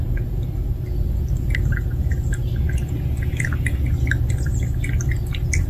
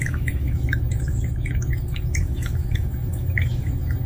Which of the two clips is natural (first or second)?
first